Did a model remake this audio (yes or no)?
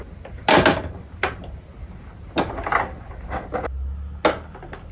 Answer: no